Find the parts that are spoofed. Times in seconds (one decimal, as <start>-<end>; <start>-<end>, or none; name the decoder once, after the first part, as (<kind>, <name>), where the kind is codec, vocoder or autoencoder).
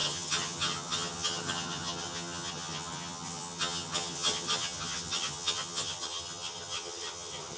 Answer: 0.0-7.6 (vocoder, HiFi-GAN)